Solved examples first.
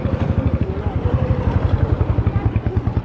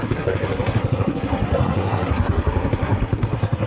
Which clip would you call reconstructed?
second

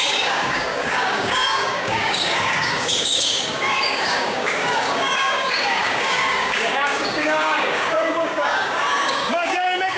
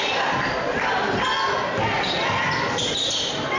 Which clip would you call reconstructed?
first